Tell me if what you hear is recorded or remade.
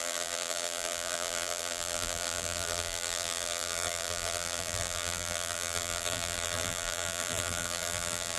remade